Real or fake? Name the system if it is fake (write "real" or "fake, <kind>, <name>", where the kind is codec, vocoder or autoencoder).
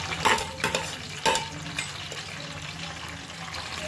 real